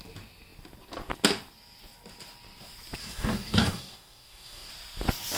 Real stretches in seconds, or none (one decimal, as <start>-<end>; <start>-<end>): 0.0-3.0; 4.7-5.4